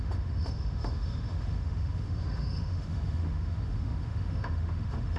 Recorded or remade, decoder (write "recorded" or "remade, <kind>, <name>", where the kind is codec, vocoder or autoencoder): remade, autoencoder, DAC-VAE